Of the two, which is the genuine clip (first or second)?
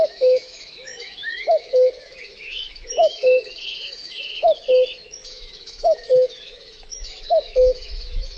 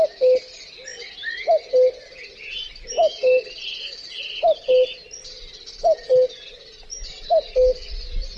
second